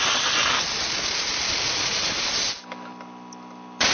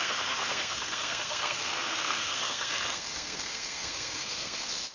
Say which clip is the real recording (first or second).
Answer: first